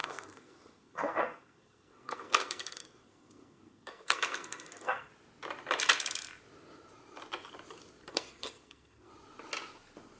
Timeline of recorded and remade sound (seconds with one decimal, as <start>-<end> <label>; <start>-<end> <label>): 0.0-5.1 remade; 5.1-8.1 recorded; 8.1-9.1 remade; 9.1-10.2 recorded